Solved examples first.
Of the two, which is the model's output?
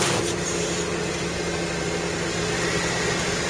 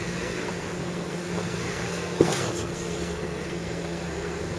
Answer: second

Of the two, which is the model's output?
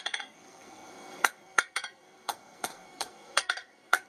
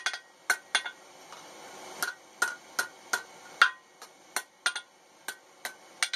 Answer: first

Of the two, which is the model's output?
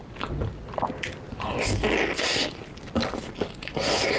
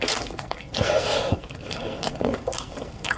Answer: second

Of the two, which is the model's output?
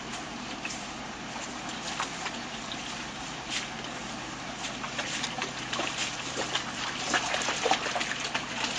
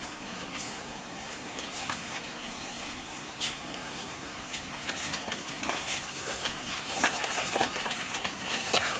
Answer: second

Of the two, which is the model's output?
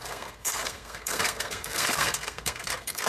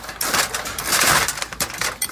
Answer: first